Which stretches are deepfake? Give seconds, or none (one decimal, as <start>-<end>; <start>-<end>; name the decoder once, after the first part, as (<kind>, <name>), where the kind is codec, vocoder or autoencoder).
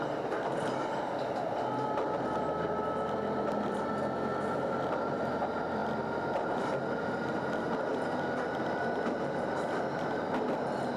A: none